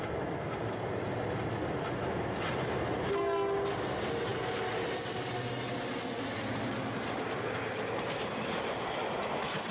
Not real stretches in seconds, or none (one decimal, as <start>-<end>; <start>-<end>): none

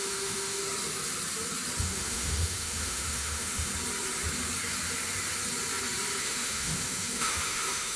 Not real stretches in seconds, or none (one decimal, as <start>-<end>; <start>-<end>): 0.0-0.6; 1.8-3.7; 6.2-8.0

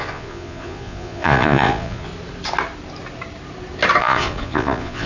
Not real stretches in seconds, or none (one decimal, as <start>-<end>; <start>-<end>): 0.0-2.1; 4.0-5.1

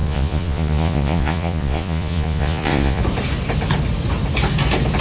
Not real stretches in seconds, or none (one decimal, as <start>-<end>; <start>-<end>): 0.0-3.0

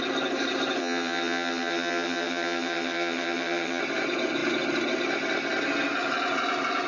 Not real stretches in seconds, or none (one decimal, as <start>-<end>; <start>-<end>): 0.8-3.8

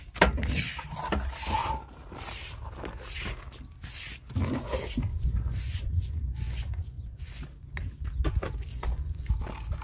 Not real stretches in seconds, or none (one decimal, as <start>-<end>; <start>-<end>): 5.1-7.4; 8.7-9.3

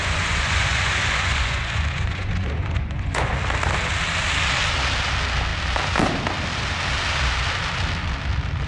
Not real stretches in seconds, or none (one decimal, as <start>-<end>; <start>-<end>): 0.0-3.3

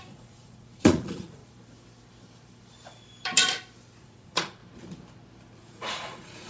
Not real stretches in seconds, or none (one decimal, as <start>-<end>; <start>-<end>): 0.0-1.4; 4.0-4.6; 5.6-6.5